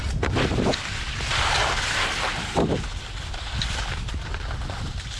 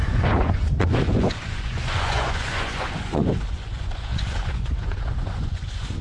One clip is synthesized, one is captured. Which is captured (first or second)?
first